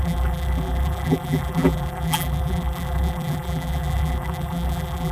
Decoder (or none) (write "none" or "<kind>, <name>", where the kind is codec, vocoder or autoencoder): vocoder, BigVGAN v2